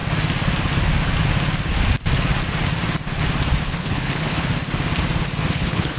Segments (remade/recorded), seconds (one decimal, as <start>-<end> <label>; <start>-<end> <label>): 0.0-3.6 recorded; 3.6-4.5 remade; 4.5-5.5 recorded; 5.5-6.0 remade